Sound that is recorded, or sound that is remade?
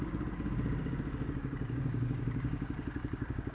remade